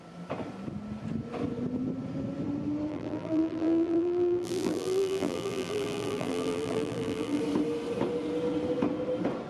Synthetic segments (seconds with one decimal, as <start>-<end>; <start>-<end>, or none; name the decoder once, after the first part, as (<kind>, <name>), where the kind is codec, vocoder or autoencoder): 2.9-7.4 (vocoder, BigVGAN v2)